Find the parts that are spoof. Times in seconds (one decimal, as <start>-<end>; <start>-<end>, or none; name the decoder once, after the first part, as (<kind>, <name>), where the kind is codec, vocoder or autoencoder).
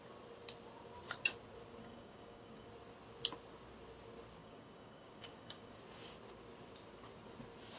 1.8-2.7 (codec, DAC); 4.4-5.7